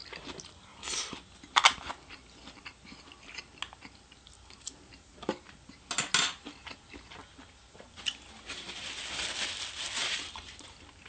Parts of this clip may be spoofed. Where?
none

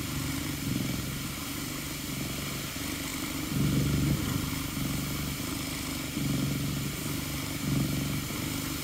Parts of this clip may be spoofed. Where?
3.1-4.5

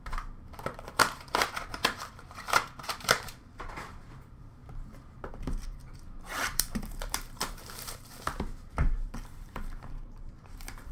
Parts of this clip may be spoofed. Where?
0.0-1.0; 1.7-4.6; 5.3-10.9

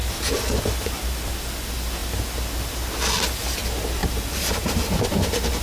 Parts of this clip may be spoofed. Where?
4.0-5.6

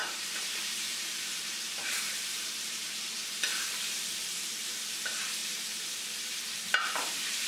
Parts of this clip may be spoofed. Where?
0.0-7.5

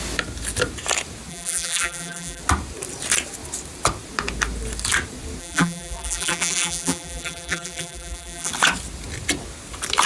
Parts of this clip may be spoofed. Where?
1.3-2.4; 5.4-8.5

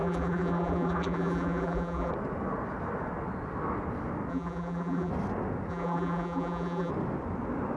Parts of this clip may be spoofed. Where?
0.0-2.1; 4.3-5.1; 5.7-6.9

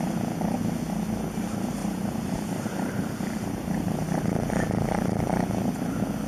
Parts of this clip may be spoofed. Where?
1.8-4.2